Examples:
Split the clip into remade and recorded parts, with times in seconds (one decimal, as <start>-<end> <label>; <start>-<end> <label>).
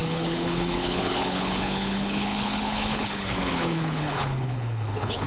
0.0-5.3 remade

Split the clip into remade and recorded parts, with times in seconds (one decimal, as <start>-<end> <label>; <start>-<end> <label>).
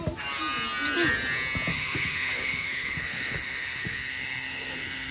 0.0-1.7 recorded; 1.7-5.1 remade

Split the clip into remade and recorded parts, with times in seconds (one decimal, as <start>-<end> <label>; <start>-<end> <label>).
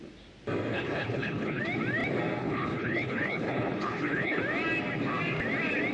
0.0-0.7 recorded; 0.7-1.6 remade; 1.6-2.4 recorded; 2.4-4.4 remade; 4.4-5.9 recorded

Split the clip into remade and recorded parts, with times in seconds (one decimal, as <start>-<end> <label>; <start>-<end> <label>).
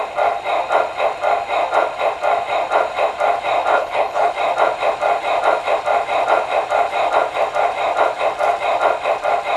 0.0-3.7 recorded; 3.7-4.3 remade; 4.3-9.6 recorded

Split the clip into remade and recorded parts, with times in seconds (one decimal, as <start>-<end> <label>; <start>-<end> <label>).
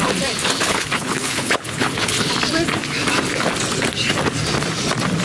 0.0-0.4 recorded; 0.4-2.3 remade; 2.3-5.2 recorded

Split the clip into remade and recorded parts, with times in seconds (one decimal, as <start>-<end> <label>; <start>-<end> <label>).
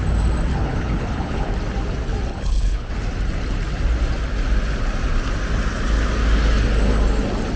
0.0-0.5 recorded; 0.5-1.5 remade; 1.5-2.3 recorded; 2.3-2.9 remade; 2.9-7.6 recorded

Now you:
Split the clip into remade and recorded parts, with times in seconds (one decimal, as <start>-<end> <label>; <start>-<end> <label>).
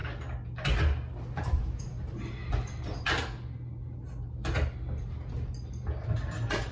0.0-6.7 recorded